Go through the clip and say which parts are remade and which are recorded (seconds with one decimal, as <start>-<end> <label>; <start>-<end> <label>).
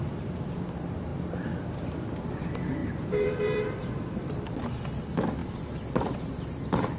0.0-2.8 recorded; 2.8-3.9 remade; 3.9-7.0 recorded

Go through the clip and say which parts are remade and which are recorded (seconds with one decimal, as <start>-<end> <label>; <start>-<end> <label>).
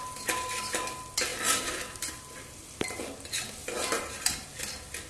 0.0-1.3 recorded; 1.3-3.0 remade; 3.0-3.6 recorded; 3.6-4.6 remade; 4.6-5.1 recorded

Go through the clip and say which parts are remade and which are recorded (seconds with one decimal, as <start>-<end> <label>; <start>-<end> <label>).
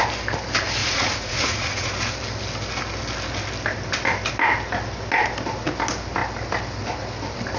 0.0-0.8 recorded; 0.8-1.9 remade; 1.9-7.6 recorded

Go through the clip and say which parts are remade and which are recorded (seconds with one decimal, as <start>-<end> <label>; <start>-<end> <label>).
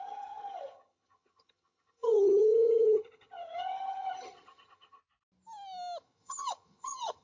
0.0-5.0 remade; 5.0-6.0 recorded; 6.0-7.2 remade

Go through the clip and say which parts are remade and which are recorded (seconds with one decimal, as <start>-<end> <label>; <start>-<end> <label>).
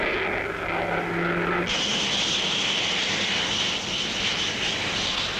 0.0-5.4 recorded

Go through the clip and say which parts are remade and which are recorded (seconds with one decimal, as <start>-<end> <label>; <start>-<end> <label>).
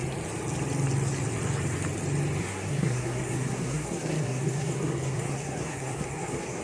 0.0-2.4 recorded; 2.4-6.6 remade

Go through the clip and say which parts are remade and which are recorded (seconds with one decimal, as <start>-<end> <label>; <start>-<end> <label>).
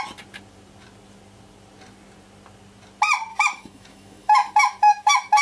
0.0-3.3 recorded; 3.3-5.4 remade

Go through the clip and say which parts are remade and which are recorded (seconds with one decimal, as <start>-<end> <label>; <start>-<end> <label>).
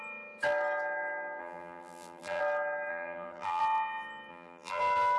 0.0-1.4 recorded; 1.4-2.4 remade; 2.4-2.9 recorded; 2.9-3.6 remade; 3.6-4.3 recorded; 4.3-4.8 remade; 4.8-5.2 recorded